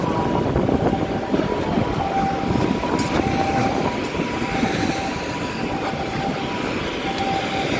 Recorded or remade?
recorded